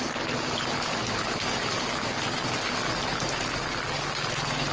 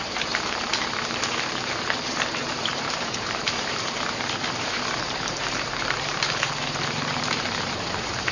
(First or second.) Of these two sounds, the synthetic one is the second